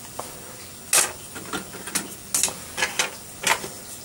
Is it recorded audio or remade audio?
recorded